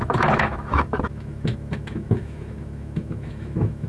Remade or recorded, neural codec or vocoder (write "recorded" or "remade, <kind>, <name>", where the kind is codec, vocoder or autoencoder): remade, autoencoder, DAC-VAE